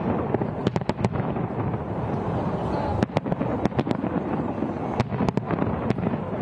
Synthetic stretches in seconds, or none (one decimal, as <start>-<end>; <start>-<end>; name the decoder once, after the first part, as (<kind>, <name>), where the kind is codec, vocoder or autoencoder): none